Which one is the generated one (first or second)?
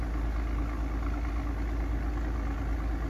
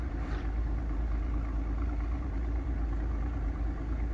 second